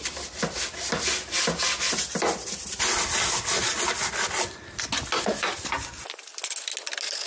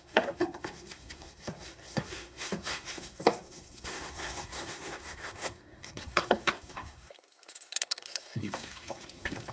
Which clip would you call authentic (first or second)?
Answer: first